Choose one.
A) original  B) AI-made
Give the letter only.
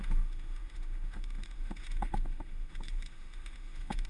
B